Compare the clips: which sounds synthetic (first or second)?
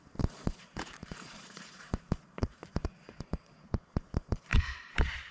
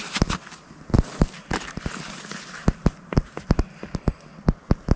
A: first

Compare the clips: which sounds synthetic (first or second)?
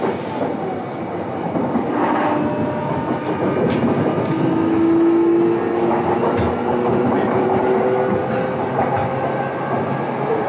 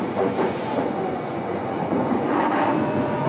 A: second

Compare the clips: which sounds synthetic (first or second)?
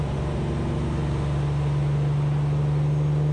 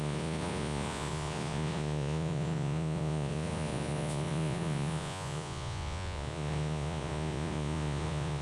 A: second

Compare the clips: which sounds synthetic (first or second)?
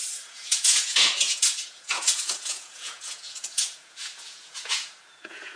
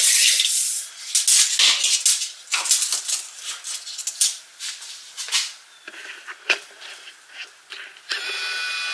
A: first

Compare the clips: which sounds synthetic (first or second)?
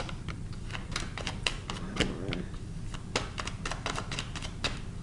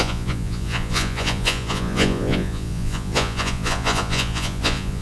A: second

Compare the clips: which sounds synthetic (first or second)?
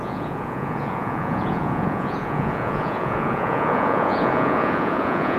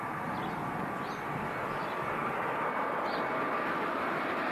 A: first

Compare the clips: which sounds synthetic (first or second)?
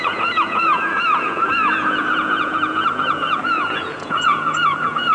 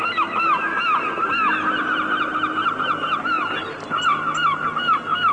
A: first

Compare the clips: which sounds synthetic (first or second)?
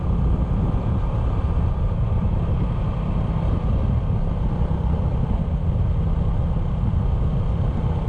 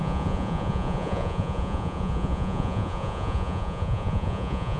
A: second